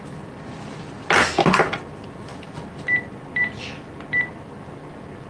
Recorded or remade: recorded